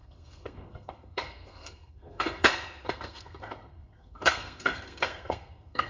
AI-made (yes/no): yes